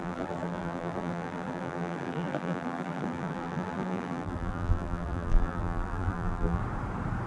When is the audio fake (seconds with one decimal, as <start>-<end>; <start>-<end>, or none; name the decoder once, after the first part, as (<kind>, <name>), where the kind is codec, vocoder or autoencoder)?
0.0-6.6 (vocoder, BigVGAN v2)